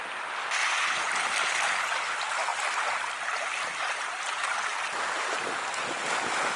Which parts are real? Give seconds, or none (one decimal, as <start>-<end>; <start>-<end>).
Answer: 0.0-0.6; 1.1-6.6